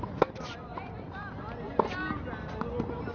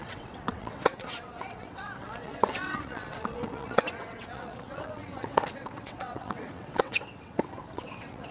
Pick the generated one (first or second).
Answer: second